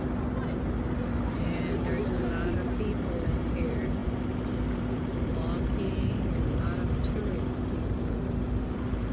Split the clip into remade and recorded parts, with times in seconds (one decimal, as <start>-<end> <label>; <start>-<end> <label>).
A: 0.0-9.1 remade